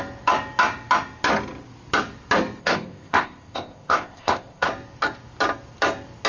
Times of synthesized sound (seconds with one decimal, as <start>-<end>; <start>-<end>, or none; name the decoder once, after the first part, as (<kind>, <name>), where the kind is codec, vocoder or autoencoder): 2.6-4.7 (codec, ZipCodec)

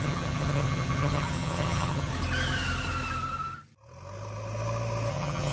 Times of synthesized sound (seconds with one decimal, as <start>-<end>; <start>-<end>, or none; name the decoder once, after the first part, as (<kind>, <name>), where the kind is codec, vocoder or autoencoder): 0.0-2.1 (vocoder, HiFi-GAN); 5.1-5.5

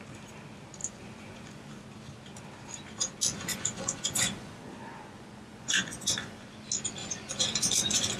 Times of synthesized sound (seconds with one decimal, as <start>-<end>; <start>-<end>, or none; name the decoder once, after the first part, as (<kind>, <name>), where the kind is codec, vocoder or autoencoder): 0.8-1.8 (vocoder, Vocos); 3.5-6.5; 7.0-8.2

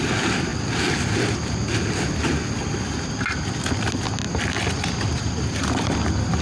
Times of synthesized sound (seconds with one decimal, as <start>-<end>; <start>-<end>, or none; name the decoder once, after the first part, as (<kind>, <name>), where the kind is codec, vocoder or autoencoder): none

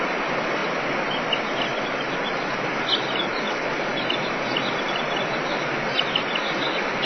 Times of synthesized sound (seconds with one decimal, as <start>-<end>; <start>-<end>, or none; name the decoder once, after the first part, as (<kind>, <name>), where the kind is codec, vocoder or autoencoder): none

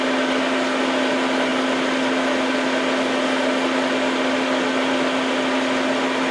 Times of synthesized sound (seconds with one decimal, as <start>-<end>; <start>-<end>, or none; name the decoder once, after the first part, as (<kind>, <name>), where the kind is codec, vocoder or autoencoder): none

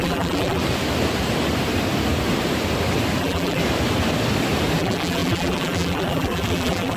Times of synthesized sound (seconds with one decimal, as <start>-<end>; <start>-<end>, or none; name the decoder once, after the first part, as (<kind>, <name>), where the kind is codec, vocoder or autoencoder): 0.0-0.6 (vocoder, BigVGAN v2); 3.2-3.6; 4.8-7.0